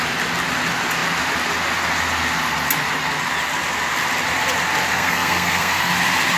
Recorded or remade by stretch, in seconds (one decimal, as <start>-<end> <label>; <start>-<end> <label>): 0.0-4.9 recorded; 4.9-5.9 remade; 5.9-6.4 recorded